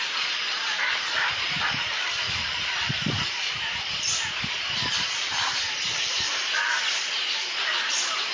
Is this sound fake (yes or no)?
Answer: yes